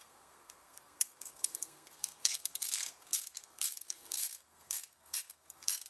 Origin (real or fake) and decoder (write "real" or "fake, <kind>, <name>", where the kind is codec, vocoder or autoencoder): fake, codec, SNAC